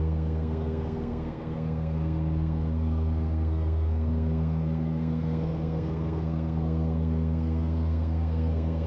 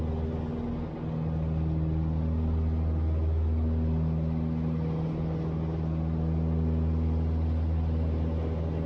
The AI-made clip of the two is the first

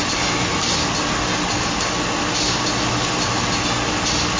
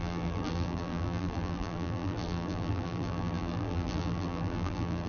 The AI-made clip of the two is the second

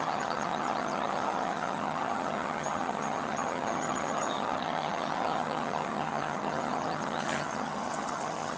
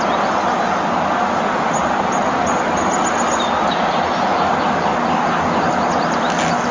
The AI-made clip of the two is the first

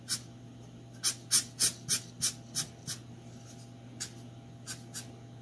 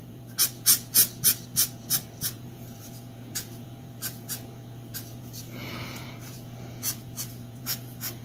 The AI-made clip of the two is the second